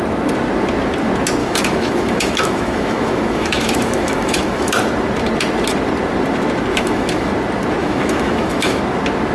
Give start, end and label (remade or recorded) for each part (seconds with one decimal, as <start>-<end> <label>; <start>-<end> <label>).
0.0-1.4 recorded; 1.4-4.7 remade; 4.7-6.7 recorded; 6.7-7.3 remade; 7.3-7.8 recorded; 7.8-8.8 remade; 8.8-9.3 recorded